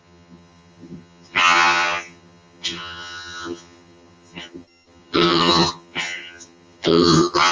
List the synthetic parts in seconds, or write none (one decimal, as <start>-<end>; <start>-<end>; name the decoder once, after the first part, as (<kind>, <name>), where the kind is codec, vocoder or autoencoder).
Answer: 0.0-7.5 (vocoder, HiFi-GAN)